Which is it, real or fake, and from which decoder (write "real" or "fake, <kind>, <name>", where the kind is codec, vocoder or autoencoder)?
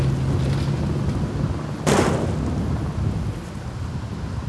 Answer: real